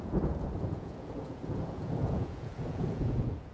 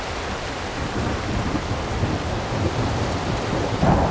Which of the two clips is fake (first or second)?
first